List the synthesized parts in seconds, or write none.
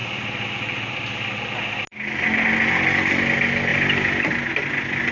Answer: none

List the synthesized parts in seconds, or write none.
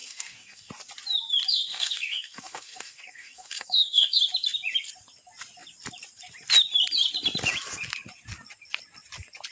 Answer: 0.0-0.7 (codec, DAC); 1.5-4.2